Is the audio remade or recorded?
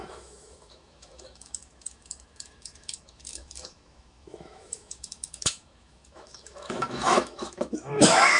remade